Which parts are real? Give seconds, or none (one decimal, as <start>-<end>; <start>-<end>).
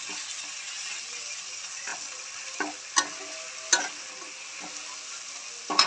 0.0-5.9